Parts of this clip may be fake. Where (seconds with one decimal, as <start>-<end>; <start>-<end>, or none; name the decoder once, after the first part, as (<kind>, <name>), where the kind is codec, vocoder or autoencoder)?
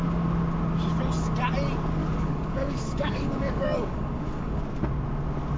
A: 2.0-4.6 (codec, DAC)